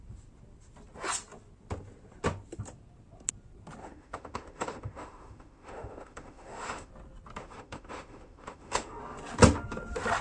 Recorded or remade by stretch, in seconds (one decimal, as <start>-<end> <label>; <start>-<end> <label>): 0.0-3.8 recorded; 3.8-6.9 remade; 6.9-7.4 recorded; 7.4-9.0 remade; 9.0-10.2 recorded